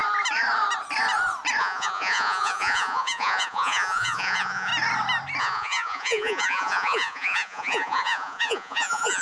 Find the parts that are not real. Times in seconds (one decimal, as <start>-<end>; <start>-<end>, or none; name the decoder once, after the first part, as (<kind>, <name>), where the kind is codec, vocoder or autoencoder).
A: 1.6-4.7 (vocoder, Vocos); 5.4-9.2